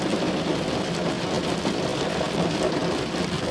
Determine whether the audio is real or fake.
fake